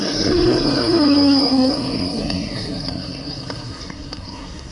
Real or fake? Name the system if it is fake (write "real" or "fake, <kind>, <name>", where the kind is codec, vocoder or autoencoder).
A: fake, codec, SNAC